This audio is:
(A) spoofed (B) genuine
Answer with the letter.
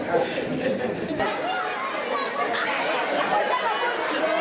B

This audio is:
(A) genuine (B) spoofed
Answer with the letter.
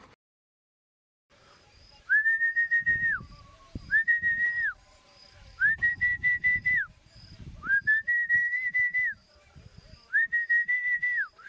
B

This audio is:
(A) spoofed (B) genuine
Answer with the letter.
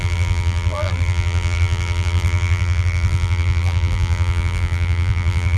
A